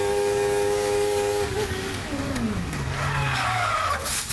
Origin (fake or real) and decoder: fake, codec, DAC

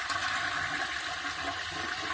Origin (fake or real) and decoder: real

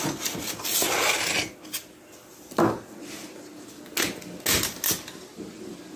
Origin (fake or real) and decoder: real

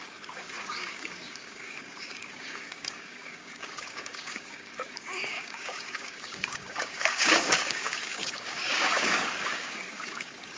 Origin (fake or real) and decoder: fake, codec, DAC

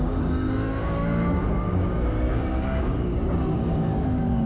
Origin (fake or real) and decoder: fake, codec, DAC